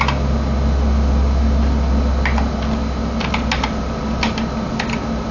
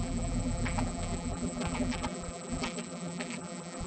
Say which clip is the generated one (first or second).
second